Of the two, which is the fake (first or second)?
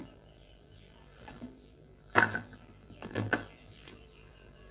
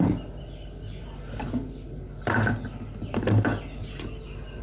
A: first